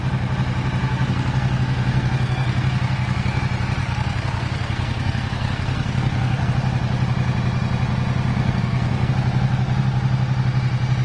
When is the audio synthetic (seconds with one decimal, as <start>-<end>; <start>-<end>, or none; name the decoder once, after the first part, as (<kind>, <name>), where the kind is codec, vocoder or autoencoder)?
0.8-3.4 (codec, SNAC); 3.8-6.5; 8.3-9.1